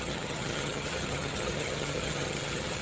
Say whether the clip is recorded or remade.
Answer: remade